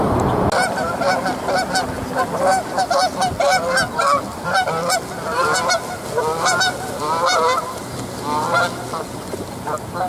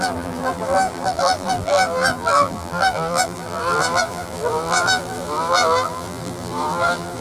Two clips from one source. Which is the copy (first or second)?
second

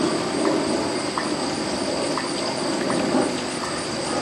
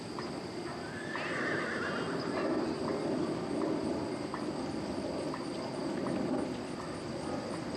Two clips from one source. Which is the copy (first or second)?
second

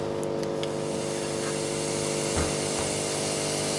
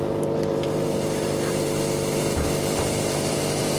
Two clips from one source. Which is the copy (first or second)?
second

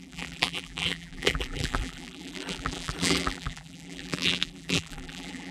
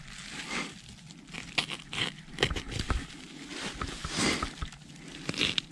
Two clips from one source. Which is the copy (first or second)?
first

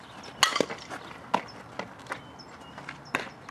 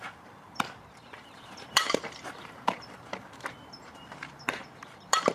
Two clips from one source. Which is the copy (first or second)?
second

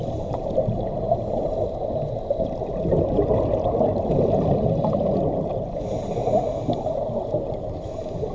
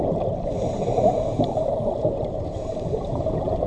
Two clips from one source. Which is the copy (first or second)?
second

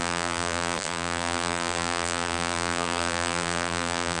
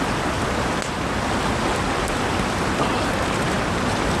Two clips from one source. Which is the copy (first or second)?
first